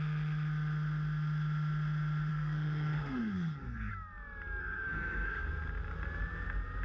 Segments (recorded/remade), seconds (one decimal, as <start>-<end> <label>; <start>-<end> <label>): 0.0-2.3 recorded; 2.3-3.9 remade; 3.9-4.6 recorded; 4.6-5.5 remade; 5.5-6.8 recorded